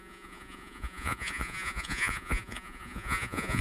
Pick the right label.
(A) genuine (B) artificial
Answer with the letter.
B